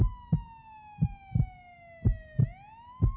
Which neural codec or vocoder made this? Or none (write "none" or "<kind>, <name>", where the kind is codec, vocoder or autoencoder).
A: none